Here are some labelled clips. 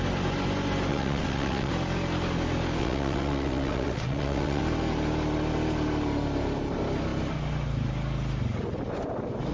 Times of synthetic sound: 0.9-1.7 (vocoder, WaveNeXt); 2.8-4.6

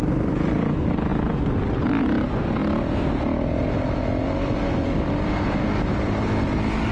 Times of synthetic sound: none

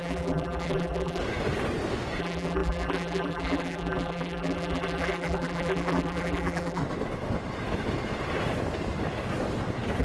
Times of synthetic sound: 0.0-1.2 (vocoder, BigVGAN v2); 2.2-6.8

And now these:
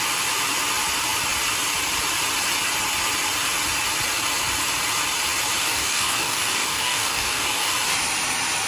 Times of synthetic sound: 5.6-7.7 (codec, DAC)

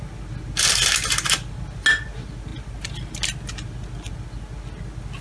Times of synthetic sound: none

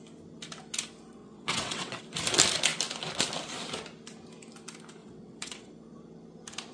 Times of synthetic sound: 1.2-2.0 (vocoder, WaveNeXt); 5.0-5.7

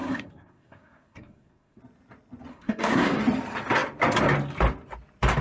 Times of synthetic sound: 0.0-1.8 (codec, SNAC); 2.5-3.2